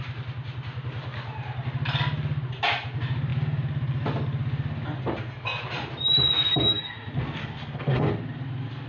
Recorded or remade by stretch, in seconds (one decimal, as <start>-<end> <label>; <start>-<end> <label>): 0.0-7.4 recorded; 7.4-8.1 remade; 8.1-8.9 recorded